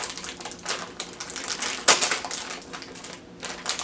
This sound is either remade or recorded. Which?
recorded